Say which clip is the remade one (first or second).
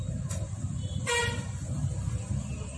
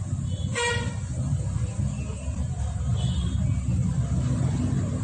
first